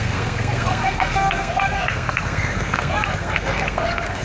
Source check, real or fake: fake